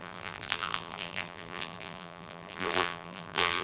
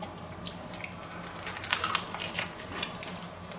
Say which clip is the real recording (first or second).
second